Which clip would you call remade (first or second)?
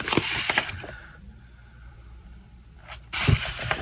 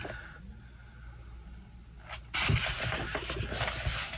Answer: first